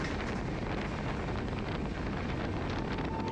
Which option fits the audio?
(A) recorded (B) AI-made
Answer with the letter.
A